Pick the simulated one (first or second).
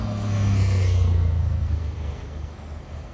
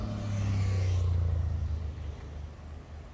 first